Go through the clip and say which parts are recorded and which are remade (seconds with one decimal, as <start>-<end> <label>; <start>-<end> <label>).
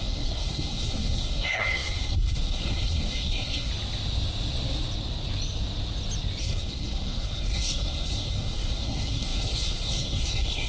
0.0-3.7 remade; 3.7-6.4 recorded; 6.4-10.7 remade